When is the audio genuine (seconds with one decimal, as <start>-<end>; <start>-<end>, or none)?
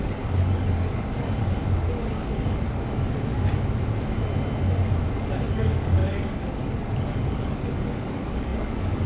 3.3-5.2